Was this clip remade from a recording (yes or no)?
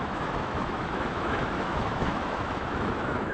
yes